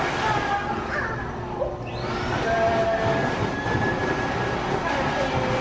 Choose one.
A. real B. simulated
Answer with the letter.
A